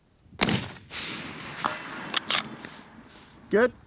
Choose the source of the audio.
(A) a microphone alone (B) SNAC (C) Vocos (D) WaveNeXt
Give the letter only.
A